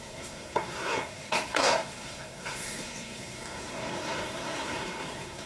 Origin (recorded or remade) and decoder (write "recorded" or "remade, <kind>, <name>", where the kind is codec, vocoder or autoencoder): remade, codec, SNAC